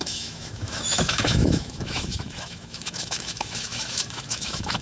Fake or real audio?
fake